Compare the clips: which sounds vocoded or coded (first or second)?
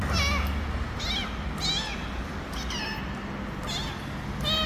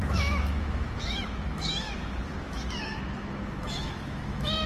second